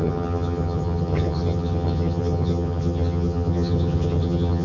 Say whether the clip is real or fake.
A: fake